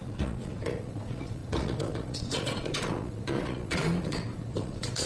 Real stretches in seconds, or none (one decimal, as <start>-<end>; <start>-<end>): none